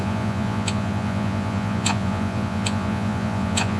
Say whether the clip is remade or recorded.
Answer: remade